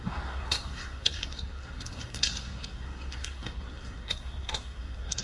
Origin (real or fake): fake